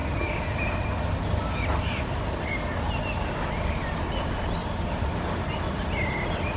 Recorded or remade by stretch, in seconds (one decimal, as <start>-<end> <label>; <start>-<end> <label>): 0.0-6.6 recorded